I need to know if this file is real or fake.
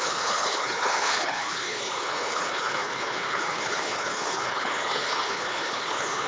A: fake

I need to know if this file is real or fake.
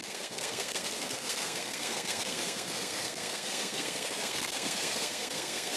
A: fake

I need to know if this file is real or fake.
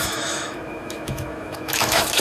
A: fake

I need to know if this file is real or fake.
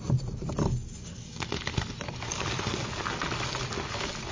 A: real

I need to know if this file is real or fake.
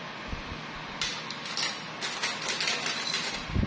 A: real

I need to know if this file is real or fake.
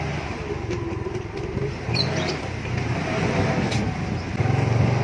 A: real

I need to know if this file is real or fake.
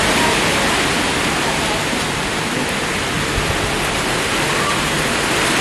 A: real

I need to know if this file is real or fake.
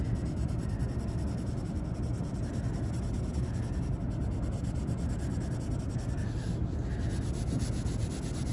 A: real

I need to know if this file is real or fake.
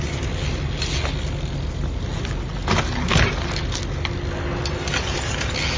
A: real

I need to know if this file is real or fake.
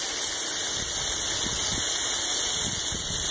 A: real